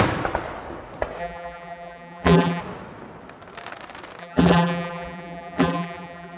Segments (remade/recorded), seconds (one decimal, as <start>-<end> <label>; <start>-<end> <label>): 0.0-1.2 recorded; 1.2-2.6 remade; 2.6-4.2 recorded; 4.2-6.4 remade